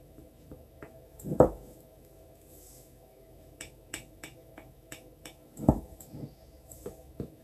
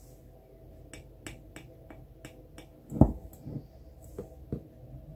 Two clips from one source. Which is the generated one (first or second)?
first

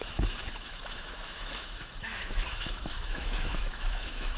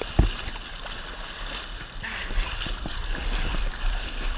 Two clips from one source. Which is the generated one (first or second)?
first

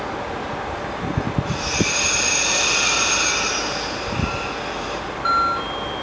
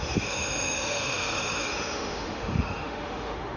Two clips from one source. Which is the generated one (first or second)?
second